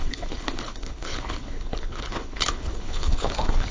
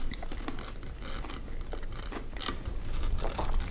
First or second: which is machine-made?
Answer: first